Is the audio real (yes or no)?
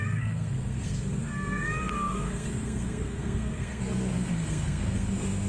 no